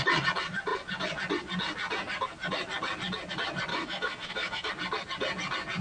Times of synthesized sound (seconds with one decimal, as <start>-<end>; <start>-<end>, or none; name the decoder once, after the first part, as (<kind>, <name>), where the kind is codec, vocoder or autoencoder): 3.7-4.7 (autoencoder, DAC-VAE)